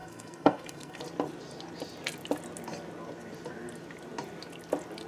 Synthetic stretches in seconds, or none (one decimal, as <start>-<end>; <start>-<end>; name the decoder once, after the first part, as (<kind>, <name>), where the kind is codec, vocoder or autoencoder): 0.0-1.0 (codec, SNAC)